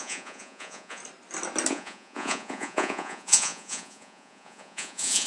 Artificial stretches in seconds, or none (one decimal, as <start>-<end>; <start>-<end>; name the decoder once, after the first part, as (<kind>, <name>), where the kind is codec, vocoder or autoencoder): 0.0-1.0 (vocoder, Vocos); 1.7-5.3